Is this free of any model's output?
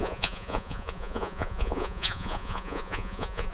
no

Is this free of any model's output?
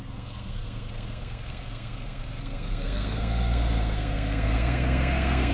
no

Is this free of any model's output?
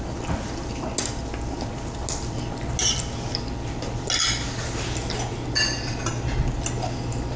yes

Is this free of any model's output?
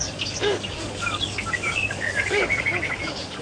no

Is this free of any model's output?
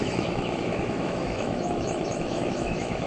no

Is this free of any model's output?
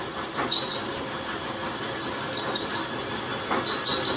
yes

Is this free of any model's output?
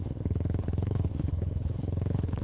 no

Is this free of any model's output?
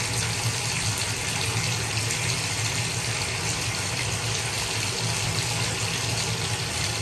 yes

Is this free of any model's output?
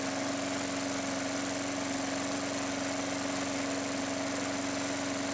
yes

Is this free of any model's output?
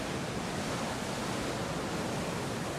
yes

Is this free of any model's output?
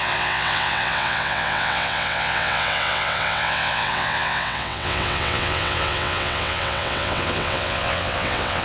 no